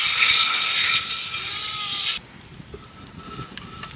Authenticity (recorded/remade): recorded